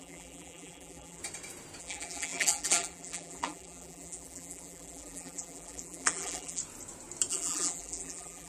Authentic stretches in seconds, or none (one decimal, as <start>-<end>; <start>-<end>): 1.2-1.8; 6.6-7.3